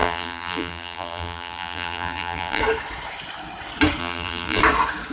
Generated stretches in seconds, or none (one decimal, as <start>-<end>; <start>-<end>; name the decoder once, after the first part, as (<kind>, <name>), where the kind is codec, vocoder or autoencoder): 0.0-2.6 (vocoder, BigVGAN v2); 4.0-4.6